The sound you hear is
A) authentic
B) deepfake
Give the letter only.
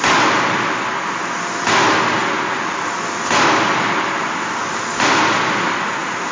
A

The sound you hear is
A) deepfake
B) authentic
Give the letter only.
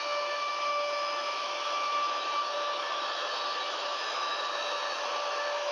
A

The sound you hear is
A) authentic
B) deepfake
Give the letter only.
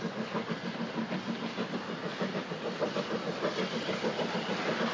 A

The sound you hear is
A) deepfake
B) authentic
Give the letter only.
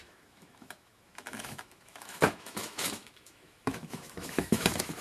A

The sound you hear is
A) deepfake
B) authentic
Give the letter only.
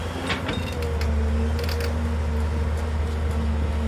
B